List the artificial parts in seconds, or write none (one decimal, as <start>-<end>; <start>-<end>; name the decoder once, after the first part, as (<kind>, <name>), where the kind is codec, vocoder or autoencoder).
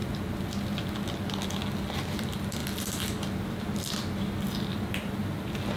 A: none